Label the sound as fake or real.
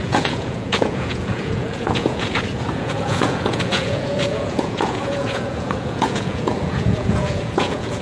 fake